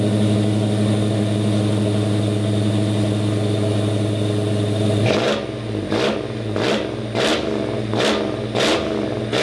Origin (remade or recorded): recorded